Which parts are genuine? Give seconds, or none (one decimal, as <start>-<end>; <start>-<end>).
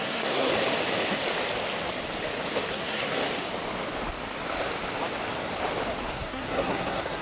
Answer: 0.5-2.7; 3.2-6.0